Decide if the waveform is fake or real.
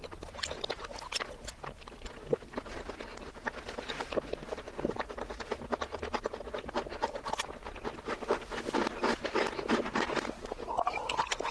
real